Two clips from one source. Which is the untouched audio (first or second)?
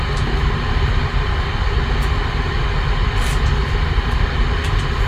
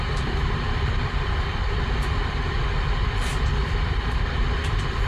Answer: first